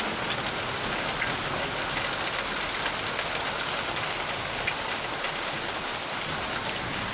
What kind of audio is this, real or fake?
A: real